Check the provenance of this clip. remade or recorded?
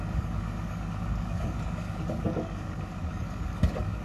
remade